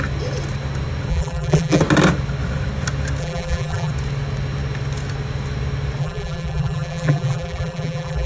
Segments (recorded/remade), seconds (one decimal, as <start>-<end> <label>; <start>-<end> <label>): 0.0-1.1 recorded; 1.1-1.8 remade; 1.8-3.2 recorded; 3.2-3.9 remade; 3.9-6.0 recorded; 6.0-8.3 remade